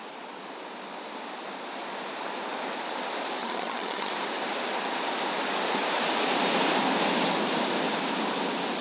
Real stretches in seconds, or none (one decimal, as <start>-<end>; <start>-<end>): 0.0-3.4; 4.1-8.8